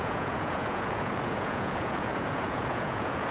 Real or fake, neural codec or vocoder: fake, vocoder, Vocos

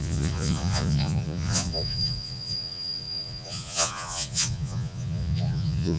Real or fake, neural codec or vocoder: fake, vocoder, Vocos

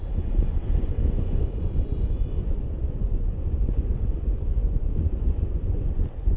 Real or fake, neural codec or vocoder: fake, vocoder, Vocos